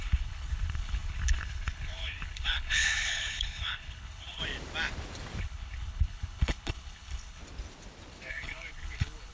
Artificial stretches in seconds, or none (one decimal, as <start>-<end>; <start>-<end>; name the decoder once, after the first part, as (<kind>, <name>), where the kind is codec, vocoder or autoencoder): 0.0-4.4 (codec, HILCodec); 5.4-7.4; 8.3-9.3